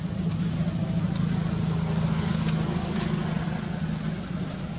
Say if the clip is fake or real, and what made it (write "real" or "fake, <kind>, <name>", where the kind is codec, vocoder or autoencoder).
real